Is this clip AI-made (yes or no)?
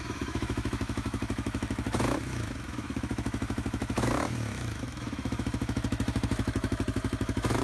yes